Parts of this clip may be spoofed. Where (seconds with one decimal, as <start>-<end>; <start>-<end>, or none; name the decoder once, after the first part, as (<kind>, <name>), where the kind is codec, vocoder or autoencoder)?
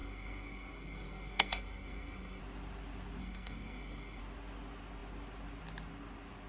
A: 0.0-2.4 (codec, SNAC); 3.2-4.2